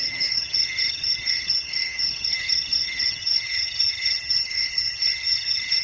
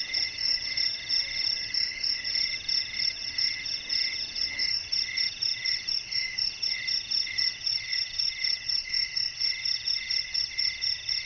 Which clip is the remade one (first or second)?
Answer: first